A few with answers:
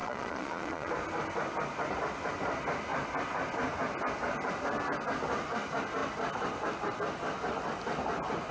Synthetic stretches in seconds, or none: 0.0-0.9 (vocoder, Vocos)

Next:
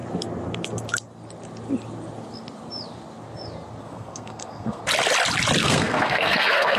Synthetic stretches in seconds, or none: 3.8-4.8 (codec, SNAC); 5.6-6.8

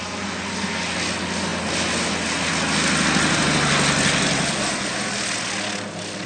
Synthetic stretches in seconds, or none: none

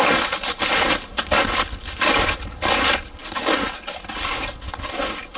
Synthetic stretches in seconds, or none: none

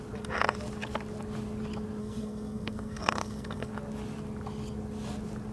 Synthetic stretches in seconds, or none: 2.0-3.7 (codec, SNAC)